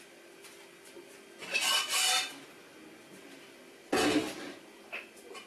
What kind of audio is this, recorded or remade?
recorded